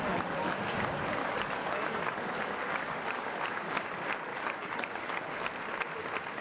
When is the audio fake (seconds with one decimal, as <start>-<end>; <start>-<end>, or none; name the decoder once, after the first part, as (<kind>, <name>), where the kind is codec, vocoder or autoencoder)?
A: 1.2-3.7 (codec, DAC); 4.3-5.2